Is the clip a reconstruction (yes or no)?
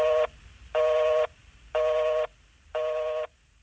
no